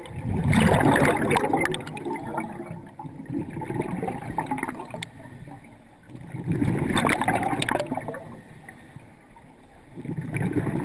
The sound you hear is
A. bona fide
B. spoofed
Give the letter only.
A